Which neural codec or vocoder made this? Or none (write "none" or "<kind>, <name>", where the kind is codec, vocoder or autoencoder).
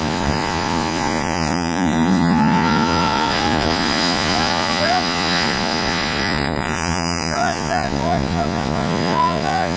vocoder, Vocos